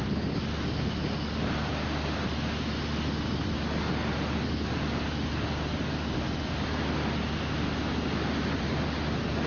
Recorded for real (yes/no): yes